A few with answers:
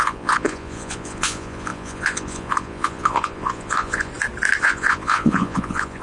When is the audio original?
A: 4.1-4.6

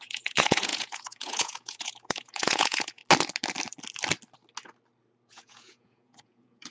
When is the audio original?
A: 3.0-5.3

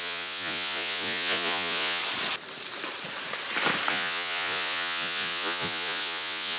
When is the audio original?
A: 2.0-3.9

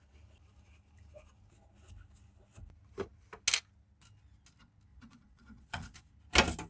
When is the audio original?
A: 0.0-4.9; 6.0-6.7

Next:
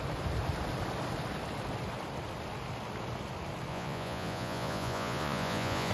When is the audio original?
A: 0.0-3.7

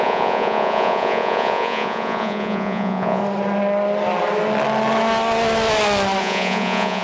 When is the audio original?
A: 3.2-6.2